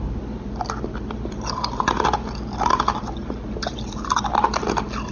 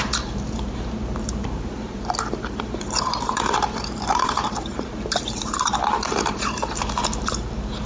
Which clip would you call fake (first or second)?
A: second